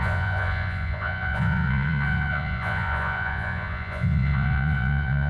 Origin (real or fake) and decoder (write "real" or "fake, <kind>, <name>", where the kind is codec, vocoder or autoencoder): fake, vocoder, Vocos